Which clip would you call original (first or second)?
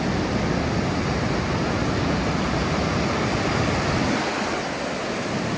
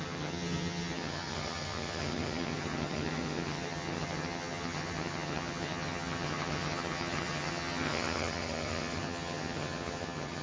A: first